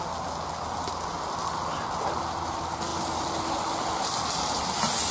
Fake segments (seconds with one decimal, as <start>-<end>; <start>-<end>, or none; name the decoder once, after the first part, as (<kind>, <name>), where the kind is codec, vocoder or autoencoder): none